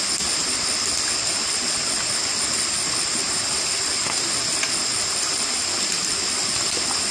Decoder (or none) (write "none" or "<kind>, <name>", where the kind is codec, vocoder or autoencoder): none